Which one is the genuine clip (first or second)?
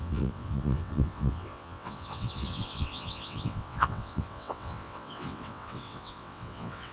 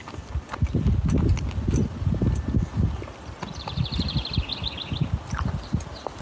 second